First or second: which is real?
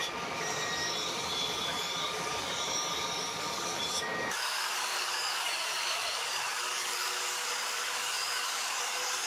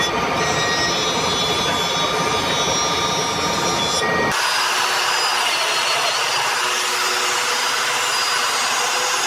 second